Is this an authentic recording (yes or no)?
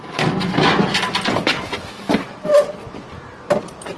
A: yes